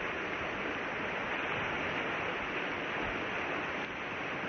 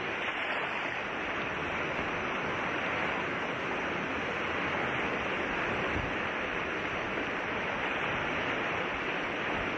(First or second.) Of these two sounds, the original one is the first